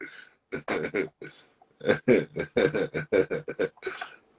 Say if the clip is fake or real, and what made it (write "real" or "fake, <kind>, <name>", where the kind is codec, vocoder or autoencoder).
real